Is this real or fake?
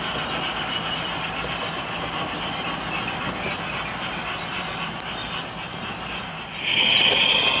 real